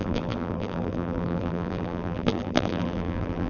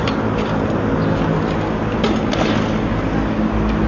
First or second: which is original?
second